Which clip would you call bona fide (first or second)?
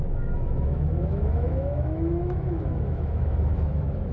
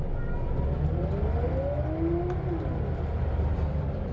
second